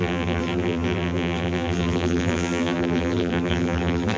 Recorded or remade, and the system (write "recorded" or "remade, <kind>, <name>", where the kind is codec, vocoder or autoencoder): remade, vocoder, BigVGAN v2